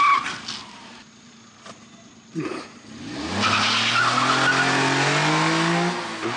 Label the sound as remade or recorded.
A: recorded